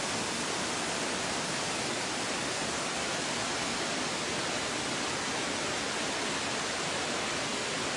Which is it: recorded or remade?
recorded